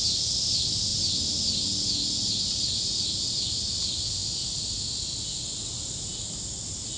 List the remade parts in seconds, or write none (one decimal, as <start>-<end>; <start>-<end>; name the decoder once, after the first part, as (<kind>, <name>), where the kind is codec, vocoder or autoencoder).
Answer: none

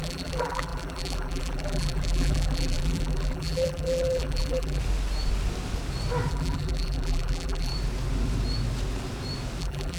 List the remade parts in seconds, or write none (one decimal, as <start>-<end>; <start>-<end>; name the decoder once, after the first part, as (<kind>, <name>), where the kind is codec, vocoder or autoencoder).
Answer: 0.0-4.8 (vocoder, BigVGAN v2); 6.3-7.7; 9.6-10.0